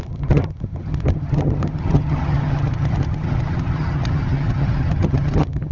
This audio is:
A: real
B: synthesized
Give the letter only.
B